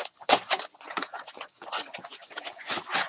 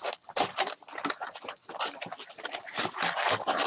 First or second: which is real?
second